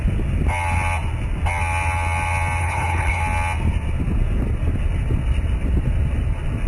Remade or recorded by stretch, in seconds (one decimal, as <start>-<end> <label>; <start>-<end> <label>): 0.0-2.6 recorded; 2.6-3.2 remade; 3.2-6.7 recorded